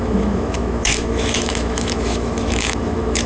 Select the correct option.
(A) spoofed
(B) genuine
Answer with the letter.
A